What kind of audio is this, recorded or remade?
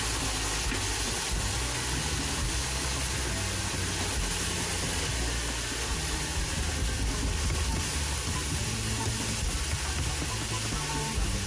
recorded